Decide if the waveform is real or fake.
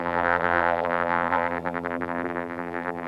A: fake